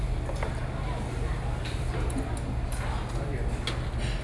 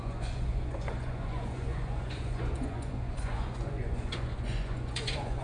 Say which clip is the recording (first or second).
first